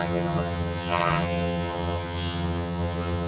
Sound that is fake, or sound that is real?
fake